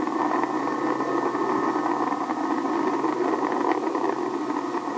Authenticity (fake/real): real